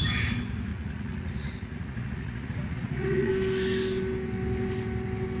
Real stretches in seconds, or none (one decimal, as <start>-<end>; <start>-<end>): 0.0-0.7; 3.3-5.4